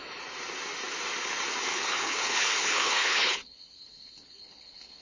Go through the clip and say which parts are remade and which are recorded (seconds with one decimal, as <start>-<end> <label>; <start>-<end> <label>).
0.0-1.7 recorded; 1.7-5.0 remade